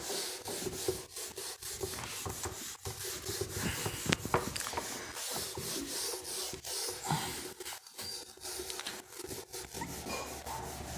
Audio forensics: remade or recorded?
recorded